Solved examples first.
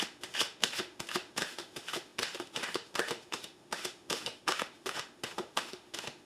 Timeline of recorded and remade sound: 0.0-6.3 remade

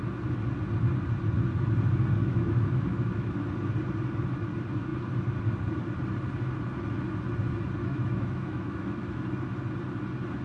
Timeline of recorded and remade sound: 0.0-2.2 recorded; 2.2-3.3 remade; 3.3-7.8 recorded; 7.8-9.2 remade; 9.2-10.4 recorded

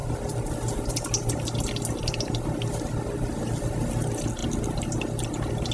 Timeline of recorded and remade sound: 0.0-5.7 recorded

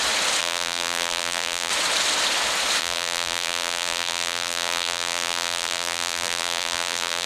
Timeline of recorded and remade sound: 0.0-0.4 recorded; 0.4-1.7 remade; 1.7-2.8 recorded; 2.8-7.3 remade

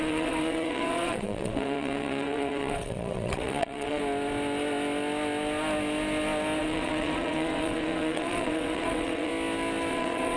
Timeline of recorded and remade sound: 0.0-4.0 remade; 4.0-6.6 recorded; 6.6-9.3 remade; 9.3-9.9 recorded; 9.9-10.4 remade

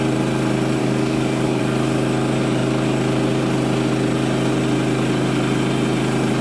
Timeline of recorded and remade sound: 0.0-0.8 recorded; 0.8-1.6 remade; 1.6-6.4 recorded

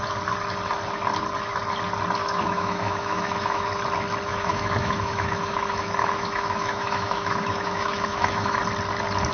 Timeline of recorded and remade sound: 0.0-2.2 recorded; 2.2-3.7 remade; 3.7-4.3 recorded; 4.3-8.6 remade; 8.6-9.3 recorded